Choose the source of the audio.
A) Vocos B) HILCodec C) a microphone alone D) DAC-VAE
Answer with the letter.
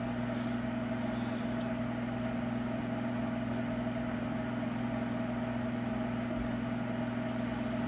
C